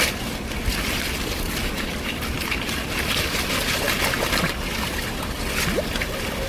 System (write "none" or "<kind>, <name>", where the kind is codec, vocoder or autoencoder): none